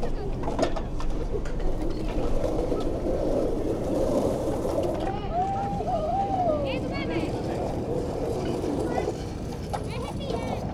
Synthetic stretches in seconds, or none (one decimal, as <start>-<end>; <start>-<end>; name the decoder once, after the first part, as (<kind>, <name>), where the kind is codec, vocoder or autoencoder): 0.0-6.2 (vocoder, BigVGAN v2); 6.9-10.7